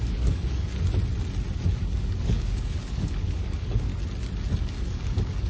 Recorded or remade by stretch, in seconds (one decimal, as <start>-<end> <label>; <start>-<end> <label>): 0.0-0.7 remade; 0.7-1.8 recorded; 1.8-3.9 remade; 3.9-4.6 recorded; 4.6-5.5 remade